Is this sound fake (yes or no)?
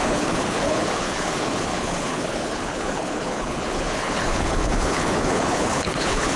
yes